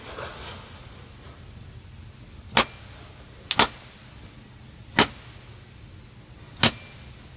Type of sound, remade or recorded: recorded